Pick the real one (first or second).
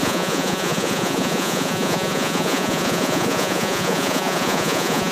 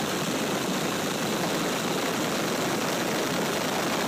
second